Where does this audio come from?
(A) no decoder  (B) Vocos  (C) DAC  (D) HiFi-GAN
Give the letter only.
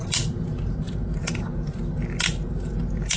A